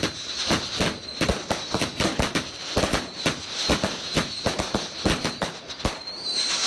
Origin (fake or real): real